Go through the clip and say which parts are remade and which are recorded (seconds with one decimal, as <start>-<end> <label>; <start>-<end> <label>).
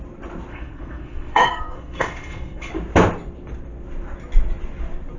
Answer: 0.0-0.5 recorded; 0.5-2.7 remade; 2.7-5.2 recorded